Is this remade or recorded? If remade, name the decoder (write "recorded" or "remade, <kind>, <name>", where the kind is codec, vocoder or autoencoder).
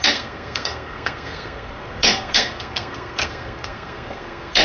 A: remade, codec, SNAC